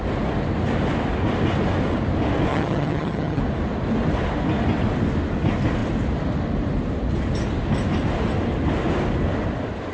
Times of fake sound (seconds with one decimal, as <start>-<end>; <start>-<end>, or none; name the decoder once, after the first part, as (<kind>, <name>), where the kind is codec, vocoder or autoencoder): 2.5-3.4 (vocoder, HiFi-GAN)